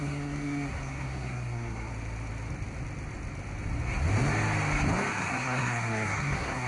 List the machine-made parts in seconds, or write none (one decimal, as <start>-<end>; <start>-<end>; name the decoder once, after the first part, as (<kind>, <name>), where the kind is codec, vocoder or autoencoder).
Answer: 0.0-1.9 (codec, SNAC); 5.1-6.7